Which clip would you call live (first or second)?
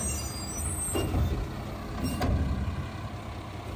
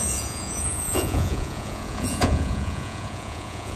first